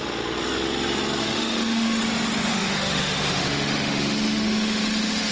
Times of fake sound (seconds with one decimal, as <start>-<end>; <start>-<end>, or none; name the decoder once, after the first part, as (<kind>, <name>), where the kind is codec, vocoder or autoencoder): 1.2-2.0 (autoencoder, DAC-VAE); 2.5-5.3

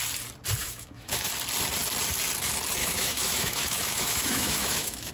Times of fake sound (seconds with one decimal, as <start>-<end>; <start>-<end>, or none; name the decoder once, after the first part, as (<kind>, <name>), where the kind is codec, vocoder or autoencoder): 0.6-1.3 (autoencoder, DAC-VAE); 2.8-5.1

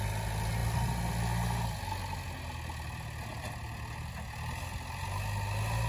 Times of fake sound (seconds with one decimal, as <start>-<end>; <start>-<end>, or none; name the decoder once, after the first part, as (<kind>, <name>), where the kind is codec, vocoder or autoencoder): none

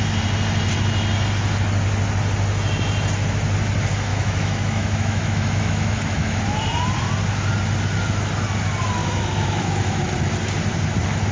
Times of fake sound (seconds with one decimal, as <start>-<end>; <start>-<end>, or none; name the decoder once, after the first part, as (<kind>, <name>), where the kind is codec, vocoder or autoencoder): 4.1-6.4 (autoencoder, DAC-VAE); 9.0-10.0

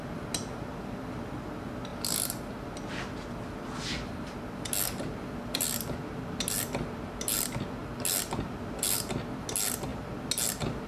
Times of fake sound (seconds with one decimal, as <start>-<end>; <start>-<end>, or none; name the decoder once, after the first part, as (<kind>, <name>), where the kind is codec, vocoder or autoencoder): none